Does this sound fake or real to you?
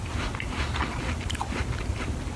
real